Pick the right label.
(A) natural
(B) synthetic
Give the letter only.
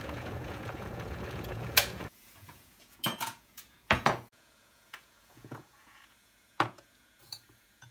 B